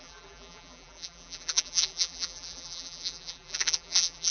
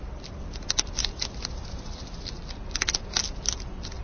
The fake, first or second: first